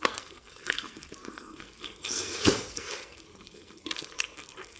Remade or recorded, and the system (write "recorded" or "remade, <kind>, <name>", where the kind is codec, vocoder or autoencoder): remade, codec, SNAC